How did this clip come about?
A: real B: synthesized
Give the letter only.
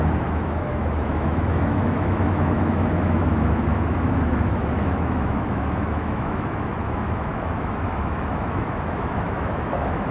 B